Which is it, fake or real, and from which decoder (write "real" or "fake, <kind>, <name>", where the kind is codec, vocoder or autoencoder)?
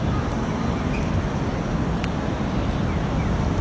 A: real